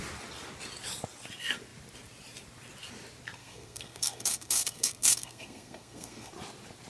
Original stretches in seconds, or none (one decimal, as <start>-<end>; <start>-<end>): 0.0-3.4; 6.3-6.9

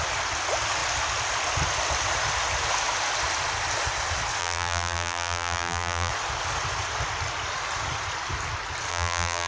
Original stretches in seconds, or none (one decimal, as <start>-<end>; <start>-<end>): 0.0-4.4; 6.1-8.9